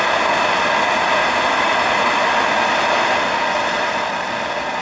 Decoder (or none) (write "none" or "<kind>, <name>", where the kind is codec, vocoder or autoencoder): none